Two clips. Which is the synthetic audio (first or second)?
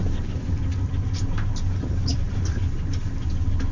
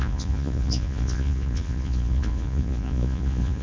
second